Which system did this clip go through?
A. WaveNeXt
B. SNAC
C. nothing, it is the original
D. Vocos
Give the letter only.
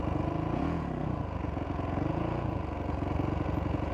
D